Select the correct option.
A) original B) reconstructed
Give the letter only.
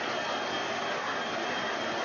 A